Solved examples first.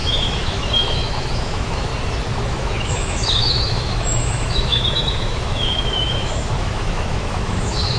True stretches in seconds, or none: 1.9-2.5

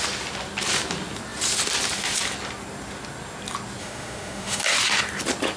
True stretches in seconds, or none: 0.0-3.8; 4.6-5.6

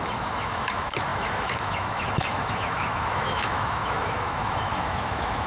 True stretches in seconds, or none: none

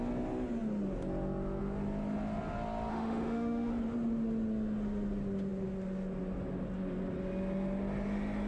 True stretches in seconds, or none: 0.0-2.9; 3.7-8.5

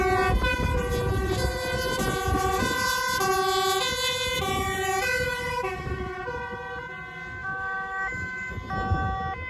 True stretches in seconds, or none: 0.0-7.4; 8.5-9.5

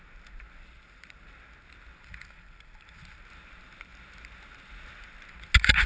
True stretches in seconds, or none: 0.0-5.9